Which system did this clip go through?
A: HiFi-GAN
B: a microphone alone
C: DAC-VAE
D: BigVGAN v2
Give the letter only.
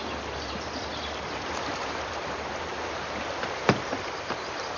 D